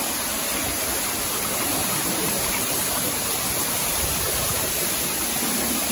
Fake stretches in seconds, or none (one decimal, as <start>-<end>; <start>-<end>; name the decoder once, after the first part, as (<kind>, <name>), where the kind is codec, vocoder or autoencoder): 1.8-4.9 (vocoder, BigVGAN v2)